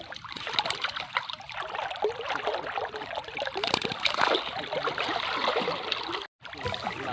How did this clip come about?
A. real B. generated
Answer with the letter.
A